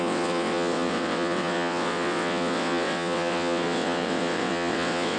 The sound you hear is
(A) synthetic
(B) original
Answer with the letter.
A